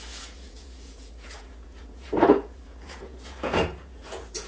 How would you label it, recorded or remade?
remade